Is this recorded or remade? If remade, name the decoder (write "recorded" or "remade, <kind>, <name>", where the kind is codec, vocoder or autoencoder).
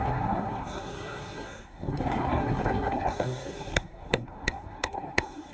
remade, codec, SNAC